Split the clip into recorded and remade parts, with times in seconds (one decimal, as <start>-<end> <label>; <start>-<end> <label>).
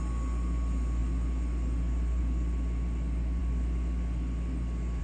0.0-5.0 recorded